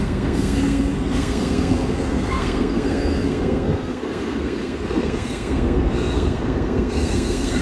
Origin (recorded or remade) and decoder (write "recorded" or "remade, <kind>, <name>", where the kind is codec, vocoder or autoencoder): remade, codec, SNAC